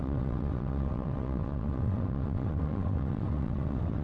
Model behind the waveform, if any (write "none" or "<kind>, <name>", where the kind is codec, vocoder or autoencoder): vocoder, WaveNeXt